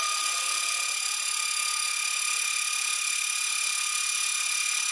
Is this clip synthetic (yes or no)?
no